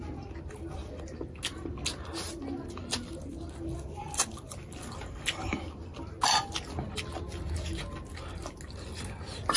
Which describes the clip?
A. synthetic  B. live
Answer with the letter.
B